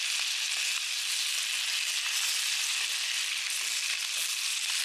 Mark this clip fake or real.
real